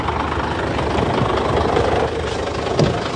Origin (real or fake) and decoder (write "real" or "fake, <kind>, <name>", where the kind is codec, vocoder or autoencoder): real